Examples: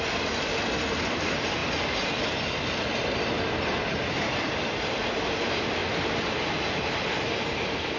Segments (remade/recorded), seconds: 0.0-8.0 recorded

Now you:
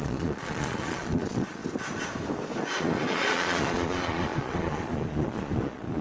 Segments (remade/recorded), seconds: 0.0-1.6 remade; 1.6-2.6 recorded; 2.6-6.0 remade

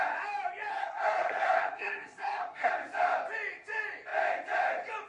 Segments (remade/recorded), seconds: 0.0-0.7 recorded; 0.7-2.7 remade; 2.7-5.1 recorded

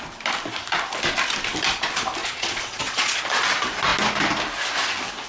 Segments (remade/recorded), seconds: 0.0-2.2 recorded; 2.2-3.2 remade; 3.2-5.3 recorded

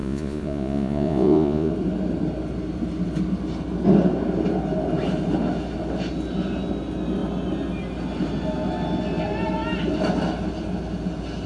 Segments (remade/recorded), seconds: 0.0-1.7 remade; 1.7-11.5 recorded

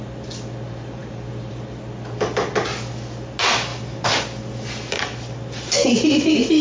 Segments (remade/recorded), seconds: 0.0-6.6 recorded